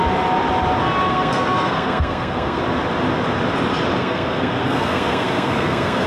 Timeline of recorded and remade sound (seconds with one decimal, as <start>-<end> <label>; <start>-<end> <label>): 0.0-1.1 recorded; 1.1-2.6 remade; 2.6-4.0 recorded; 4.0-6.1 remade